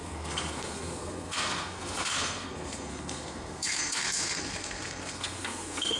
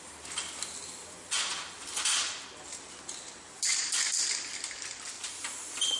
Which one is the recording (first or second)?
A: second